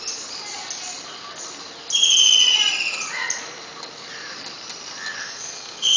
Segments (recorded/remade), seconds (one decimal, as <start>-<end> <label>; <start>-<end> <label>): 0.0-5.2 recorded; 5.2-6.0 remade